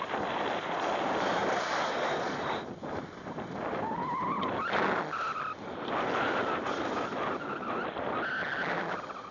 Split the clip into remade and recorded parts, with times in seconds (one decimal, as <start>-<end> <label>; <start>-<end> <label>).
0.0-9.3 recorded